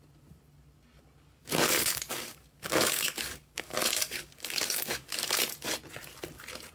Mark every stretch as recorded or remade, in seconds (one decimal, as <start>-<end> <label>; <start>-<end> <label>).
0.0-1.4 recorded; 1.4-5.4 remade; 5.4-6.7 recorded